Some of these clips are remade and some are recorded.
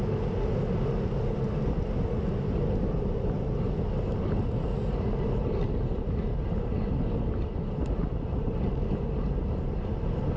recorded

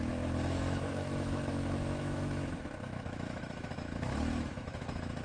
remade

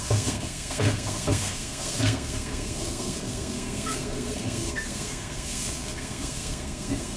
remade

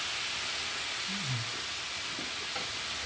recorded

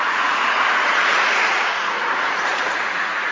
remade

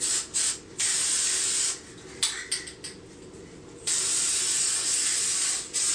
recorded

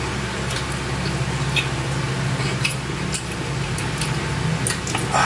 recorded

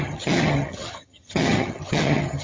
remade